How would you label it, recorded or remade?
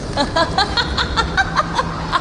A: recorded